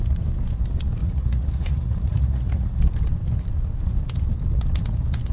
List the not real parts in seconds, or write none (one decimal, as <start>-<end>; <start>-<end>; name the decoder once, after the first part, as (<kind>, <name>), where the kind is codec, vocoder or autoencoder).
1.0-2.8 (vocoder, Vocos)